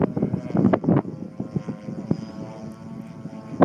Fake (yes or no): no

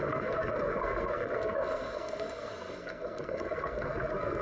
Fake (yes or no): yes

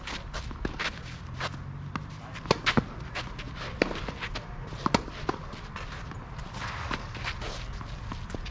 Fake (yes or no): no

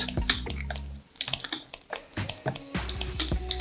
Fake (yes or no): no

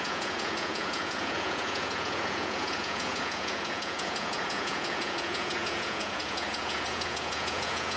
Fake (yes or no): yes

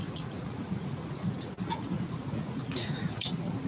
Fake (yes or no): yes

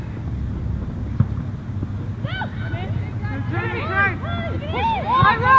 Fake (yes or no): no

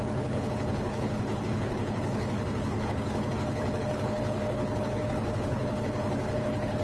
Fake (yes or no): yes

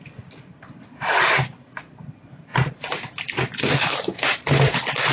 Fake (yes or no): yes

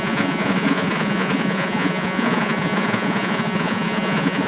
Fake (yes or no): yes